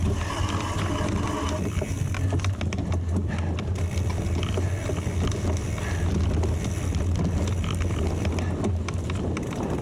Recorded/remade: recorded